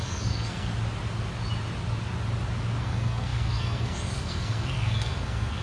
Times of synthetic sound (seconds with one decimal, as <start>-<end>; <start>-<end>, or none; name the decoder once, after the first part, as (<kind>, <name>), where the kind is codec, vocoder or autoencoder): 0.0-0.7 (codec, SNAC); 2.8-5.6